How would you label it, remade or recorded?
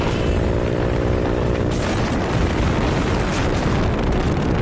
remade